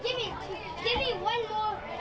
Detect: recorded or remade recorded